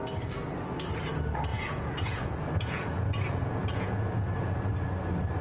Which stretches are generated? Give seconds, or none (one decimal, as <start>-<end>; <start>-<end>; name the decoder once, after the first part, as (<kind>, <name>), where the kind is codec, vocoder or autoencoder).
1.5-4.7 (vocoder, Vocos)